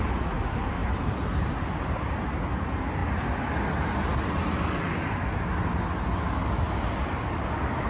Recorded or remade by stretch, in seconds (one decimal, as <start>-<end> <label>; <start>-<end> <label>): 0.0-7.9 recorded